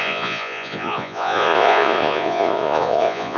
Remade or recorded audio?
remade